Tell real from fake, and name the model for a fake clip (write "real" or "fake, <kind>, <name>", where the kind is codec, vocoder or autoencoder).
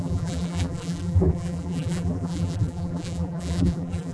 fake, vocoder, BigVGAN v2